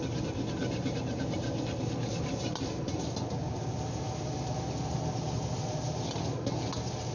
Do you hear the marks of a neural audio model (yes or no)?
no